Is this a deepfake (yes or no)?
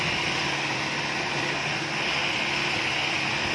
no